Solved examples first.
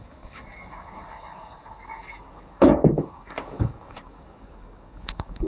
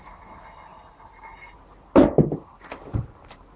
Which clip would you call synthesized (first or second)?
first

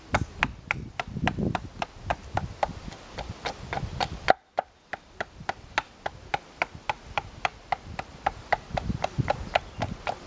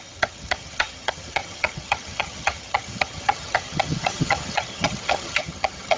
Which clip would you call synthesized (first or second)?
second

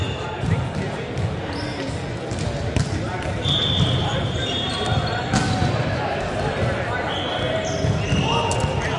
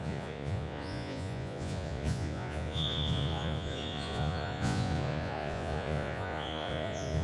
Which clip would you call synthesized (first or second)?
second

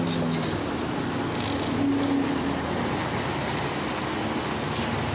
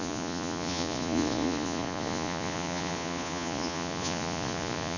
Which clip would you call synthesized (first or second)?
second